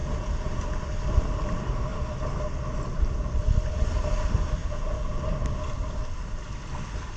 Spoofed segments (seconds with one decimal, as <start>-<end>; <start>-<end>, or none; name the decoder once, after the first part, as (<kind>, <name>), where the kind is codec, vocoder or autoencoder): 0.0-0.8 (vocoder, Vocos); 4.6-5.2

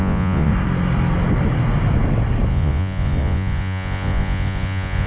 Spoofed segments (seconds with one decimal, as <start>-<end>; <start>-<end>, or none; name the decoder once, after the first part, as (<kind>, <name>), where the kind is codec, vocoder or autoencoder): 0.0-0.5 (vocoder, Vocos); 2.5-5.1

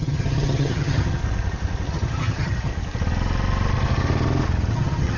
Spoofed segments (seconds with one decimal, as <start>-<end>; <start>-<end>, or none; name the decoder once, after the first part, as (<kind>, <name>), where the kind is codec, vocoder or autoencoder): 0.0-1.2 (vocoder, HiFi-GAN); 1.9-2.7; 4.7-5.2

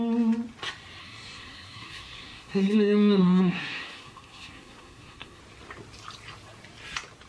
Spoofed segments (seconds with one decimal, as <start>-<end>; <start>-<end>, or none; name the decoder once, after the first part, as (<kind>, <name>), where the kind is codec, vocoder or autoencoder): 1.0-5.4 (codec, SNAC)

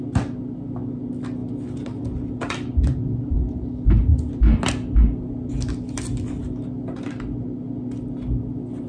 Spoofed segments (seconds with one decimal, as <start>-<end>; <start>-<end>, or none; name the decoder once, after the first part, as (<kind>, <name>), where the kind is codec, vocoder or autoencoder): none